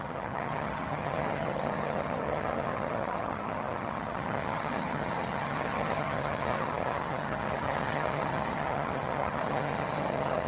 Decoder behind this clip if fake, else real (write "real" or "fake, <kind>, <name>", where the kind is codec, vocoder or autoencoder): fake, vocoder, HiFi-GAN